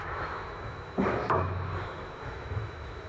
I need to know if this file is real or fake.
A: fake